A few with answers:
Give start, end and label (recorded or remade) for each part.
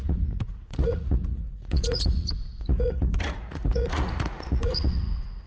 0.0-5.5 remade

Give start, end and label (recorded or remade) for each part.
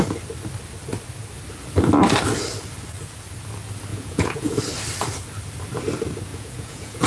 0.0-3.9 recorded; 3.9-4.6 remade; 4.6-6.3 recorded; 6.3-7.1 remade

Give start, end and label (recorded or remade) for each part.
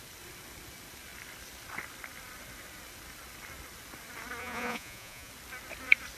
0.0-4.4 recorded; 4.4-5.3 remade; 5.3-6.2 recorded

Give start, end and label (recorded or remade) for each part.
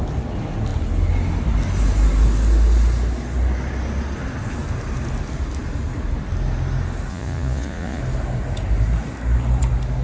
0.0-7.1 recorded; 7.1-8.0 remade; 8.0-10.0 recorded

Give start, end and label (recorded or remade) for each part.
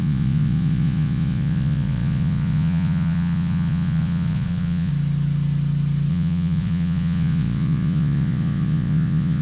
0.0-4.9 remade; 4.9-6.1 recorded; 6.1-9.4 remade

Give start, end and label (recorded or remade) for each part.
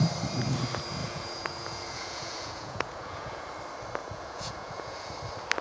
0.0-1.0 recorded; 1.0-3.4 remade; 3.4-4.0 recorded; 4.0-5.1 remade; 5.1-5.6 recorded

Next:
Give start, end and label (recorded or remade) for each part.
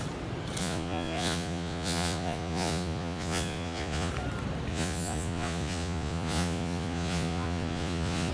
0.0-0.6 recorded; 0.6-4.1 remade; 4.1-4.7 recorded; 4.7-8.3 remade